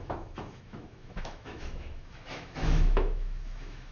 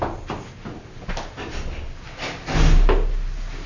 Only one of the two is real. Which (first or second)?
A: second